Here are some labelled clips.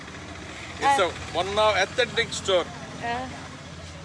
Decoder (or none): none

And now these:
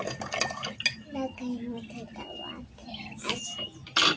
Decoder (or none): none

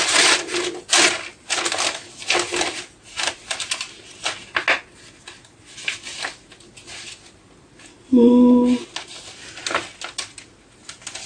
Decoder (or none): none